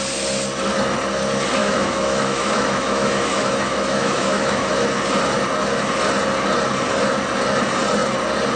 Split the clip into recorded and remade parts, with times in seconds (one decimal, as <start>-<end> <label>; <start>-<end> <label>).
0.0-1.6 recorded; 1.6-4.7 remade; 4.7-8.6 recorded